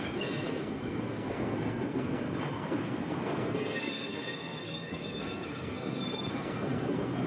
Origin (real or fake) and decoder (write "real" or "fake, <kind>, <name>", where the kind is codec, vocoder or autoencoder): fake, codec, SNAC